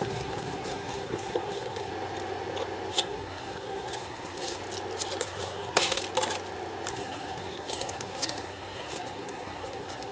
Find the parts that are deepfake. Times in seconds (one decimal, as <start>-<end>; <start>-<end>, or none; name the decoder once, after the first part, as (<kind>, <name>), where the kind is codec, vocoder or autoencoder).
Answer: 0.0-1.9 (codec, SNAC); 2.9-4.6; 5.2-6.0; 6.9-10.1